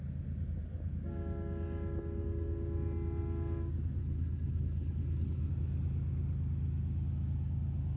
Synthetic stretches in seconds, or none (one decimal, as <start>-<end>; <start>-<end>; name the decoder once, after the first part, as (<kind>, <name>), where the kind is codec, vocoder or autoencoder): 4.0-5.5 (codec, HILCodec)